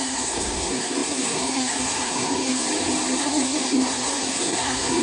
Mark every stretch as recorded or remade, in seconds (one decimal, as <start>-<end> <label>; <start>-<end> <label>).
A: 0.0-2.6 remade; 2.6-3.2 recorded; 3.2-5.0 remade